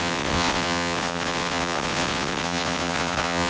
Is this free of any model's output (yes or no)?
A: no